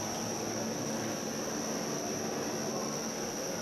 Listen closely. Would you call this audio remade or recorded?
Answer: recorded